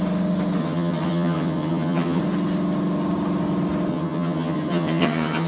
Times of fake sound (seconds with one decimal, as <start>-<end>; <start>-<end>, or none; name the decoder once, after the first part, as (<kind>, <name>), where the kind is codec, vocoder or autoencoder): 0.6-2.2 (vocoder, HiFi-GAN); 3.9-5.5